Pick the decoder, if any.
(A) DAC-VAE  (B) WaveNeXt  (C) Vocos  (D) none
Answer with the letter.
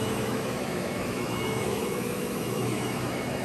A